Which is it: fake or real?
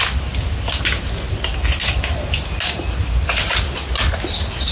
real